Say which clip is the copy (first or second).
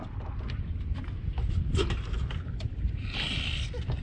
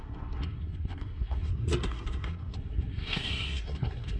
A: second